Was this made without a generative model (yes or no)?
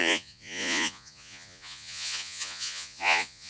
no